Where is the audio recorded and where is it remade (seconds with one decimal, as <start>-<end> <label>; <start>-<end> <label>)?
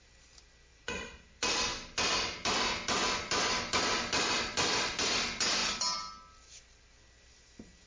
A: 0.0-0.7 recorded; 0.7-1.2 remade; 1.2-7.9 recorded